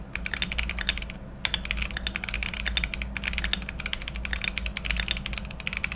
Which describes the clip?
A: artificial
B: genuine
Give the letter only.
B